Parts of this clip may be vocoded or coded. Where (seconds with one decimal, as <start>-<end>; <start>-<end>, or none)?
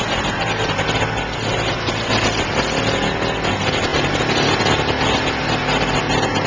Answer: 3.9-4.6